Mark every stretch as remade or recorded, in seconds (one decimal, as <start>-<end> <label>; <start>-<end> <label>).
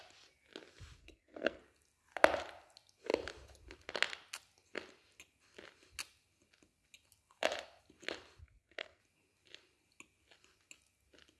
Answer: 0.0-1.0 recorded; 1.0-1.6 remade; 1.6-8.4 recorded; 8.4-9.0 remade; 9.0-11.4 recorded